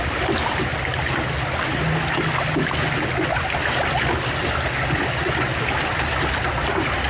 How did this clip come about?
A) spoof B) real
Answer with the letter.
B